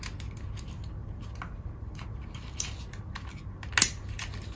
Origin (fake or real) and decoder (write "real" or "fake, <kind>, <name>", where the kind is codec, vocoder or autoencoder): real